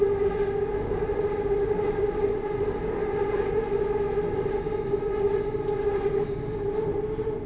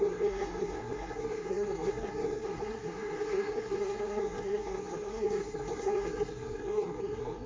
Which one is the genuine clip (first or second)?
first